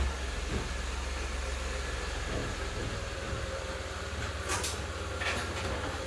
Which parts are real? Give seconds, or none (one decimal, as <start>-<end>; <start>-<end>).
0.0-6.1